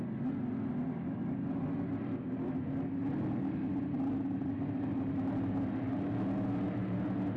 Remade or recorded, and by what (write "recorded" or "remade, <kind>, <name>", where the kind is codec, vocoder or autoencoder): recorded